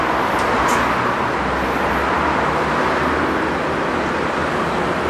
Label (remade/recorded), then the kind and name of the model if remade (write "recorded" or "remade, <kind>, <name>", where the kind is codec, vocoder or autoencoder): recorded